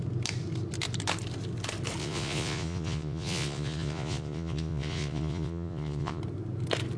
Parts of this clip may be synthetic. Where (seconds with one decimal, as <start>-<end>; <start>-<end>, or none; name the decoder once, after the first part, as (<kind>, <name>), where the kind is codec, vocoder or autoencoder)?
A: 2.0-6.2 (vocoder, Vocos)